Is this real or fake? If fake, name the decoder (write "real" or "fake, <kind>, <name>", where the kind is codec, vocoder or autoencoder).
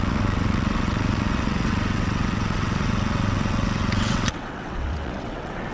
fake, vocoder, WaveNeXt